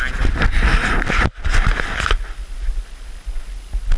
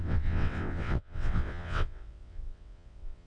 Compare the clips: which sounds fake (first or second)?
second